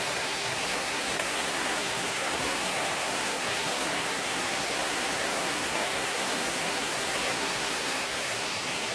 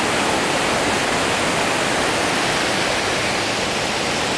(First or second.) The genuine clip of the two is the second